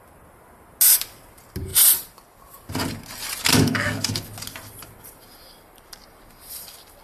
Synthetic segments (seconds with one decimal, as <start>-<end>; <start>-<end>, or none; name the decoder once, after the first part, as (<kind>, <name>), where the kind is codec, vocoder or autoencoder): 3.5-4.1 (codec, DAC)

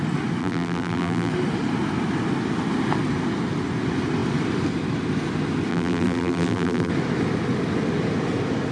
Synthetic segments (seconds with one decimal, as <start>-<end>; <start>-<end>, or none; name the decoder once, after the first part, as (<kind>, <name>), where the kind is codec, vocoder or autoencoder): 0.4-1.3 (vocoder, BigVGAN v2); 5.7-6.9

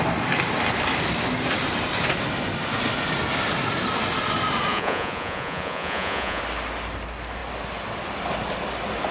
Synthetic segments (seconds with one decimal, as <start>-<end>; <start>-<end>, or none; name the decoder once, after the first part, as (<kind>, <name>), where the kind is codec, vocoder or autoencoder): 4.7-6.4 (vocoder, Vocos)